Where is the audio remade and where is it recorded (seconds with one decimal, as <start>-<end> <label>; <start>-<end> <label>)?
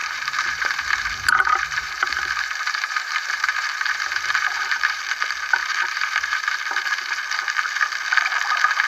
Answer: 0.0-5.0 remade; 5.0-5.6 recorded; 5.6-7.2 remade; 7.2-8.9 recorded